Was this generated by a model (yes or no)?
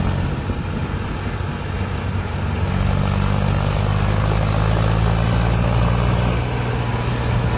no